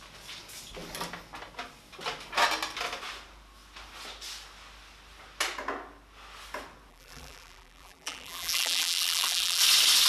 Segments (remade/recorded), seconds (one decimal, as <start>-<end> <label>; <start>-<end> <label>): 0.0-6.9 recorded; 6.9-9.6 remade; 9.6-10.1 recorded